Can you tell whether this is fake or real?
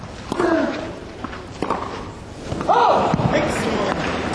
fake